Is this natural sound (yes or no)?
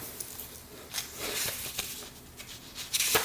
yes